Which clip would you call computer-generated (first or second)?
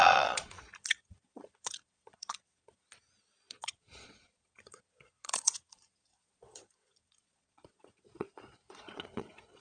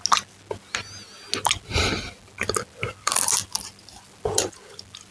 first